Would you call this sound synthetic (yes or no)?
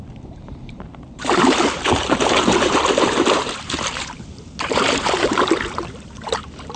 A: yes